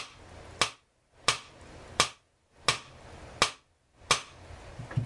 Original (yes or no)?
yes